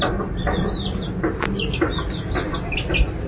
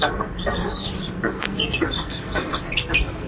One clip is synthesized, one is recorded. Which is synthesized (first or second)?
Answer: second